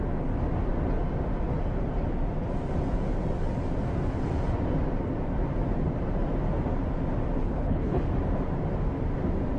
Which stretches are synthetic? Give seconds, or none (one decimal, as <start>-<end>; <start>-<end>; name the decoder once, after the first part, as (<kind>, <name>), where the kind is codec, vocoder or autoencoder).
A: 7.4-8.0 (codec, HILCodec)